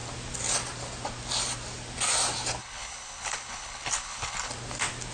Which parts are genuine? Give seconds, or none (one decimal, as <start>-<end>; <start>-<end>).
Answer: 0.0-2.6; 4.5-5.1